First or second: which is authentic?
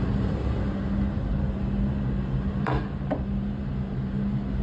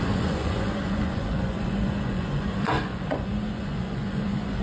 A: first